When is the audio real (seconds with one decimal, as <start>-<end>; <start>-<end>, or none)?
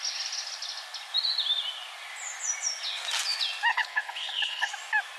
0.0-3.7; 4.7-5.2